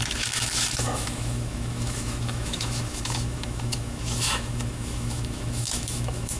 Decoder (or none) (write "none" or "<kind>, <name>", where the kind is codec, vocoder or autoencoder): autoencoder, DAC-VAE